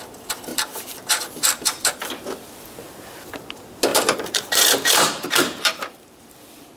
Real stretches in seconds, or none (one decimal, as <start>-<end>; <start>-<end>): 0.0-0.5; 2.1-3.9; 6.2-6.8